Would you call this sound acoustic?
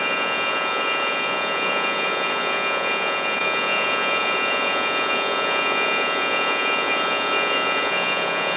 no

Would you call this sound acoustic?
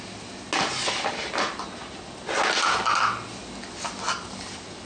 yes